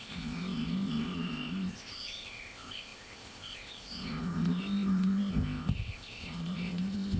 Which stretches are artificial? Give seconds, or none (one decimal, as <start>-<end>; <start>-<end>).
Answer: 0.0-7.2